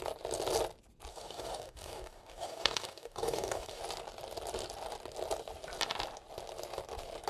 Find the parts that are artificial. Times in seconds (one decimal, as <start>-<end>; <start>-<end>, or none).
1.1-3.8